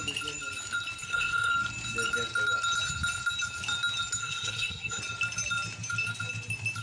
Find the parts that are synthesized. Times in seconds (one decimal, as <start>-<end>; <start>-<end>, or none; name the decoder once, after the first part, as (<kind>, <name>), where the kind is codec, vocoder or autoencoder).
1.0-1.5 (codec, SNAC); 4.2-5.0